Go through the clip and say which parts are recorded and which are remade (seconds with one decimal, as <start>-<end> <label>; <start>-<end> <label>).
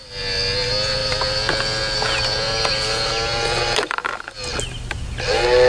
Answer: 0.0-5.7 recorded